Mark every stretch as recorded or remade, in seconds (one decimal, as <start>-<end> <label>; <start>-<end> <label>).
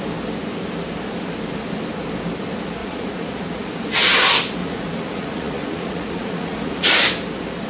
0.0-2.8 recorded; 2.8-3.7 remade; 3.7-4.6 recorded; 4.6-6.9 remade; 6.9-7.7 recorded